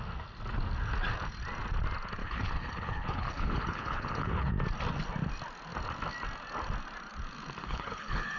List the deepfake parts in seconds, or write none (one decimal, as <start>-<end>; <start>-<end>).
2.2-4.5; 7.6-8.4